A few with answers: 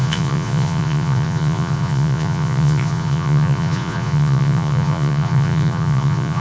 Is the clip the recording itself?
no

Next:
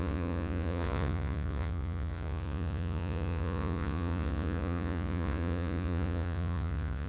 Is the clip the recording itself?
no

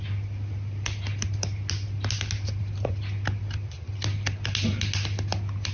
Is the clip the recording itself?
yes